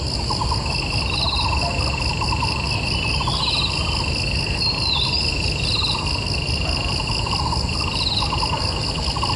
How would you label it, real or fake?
real